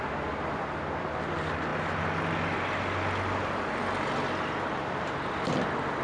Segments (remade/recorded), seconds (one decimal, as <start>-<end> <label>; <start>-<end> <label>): 0.0-6.0 recorded